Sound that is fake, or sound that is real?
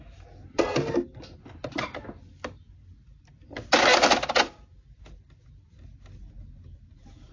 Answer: real